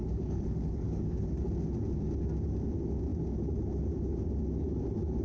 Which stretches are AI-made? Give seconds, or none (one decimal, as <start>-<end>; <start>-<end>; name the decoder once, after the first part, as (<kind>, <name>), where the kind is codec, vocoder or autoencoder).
0.0-1.5 (codec, DAC)